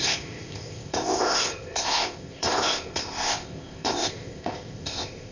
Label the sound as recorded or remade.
remade